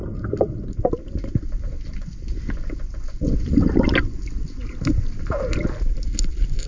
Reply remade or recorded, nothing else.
recorded